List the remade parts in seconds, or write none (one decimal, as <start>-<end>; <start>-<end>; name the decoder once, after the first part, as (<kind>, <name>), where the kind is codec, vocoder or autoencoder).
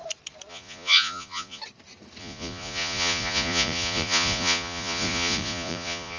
0.5-1.6 (vocoder, Vocos); 2.2-6.2